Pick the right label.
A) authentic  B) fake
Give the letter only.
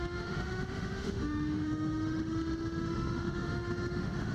B